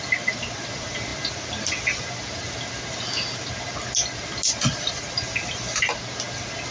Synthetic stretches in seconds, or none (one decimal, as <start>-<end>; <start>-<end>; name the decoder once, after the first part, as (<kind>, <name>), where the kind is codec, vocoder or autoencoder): none